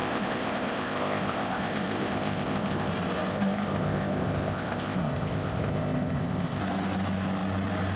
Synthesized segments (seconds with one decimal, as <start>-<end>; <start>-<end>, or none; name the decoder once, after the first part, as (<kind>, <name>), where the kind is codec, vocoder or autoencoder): 0.0-2.9 (codec, ZipCodec); 3.3-6.6